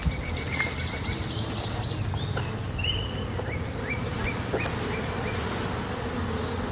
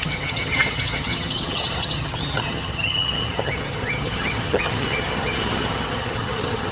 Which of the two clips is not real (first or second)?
second